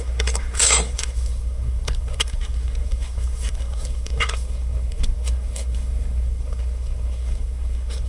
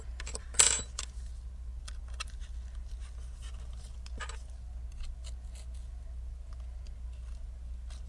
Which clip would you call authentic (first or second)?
second